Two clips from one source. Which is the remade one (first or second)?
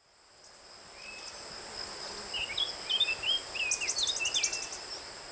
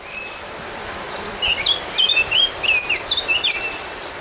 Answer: second